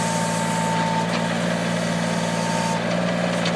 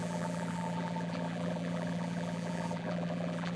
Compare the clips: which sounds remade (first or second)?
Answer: second